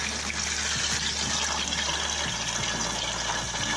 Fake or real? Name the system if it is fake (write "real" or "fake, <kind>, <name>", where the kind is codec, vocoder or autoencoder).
real